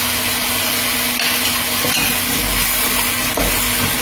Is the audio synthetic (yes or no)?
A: no